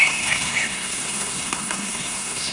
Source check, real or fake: fake